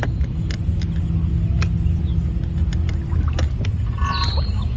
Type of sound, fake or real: real